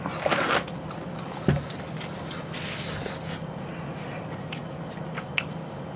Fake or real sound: real